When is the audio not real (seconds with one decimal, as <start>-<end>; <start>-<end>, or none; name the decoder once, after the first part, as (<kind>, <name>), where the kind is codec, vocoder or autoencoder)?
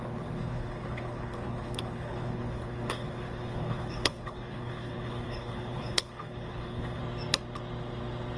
0.0-7.0 (codec, HILCodec)